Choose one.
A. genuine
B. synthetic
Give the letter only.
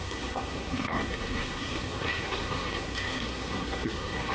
B